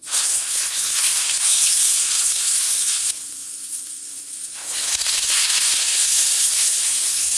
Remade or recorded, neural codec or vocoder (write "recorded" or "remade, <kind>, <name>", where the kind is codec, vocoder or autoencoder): remade, codec, SNAC